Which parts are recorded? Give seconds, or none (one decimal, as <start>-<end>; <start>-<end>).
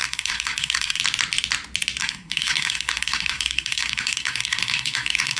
1.0-2.0